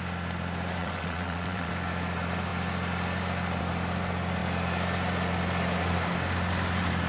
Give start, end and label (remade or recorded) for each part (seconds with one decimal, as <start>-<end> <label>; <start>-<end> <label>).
0.0-0.8 recorded; 0.8-1.7 remade; 1.7-7.1 recorded